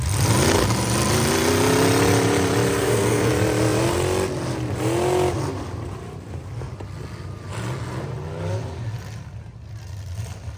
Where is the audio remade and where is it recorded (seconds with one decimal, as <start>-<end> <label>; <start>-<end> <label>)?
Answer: 0.0-2.8 recorded; 2.8-3.3 remade; 3.3-10.6 recorded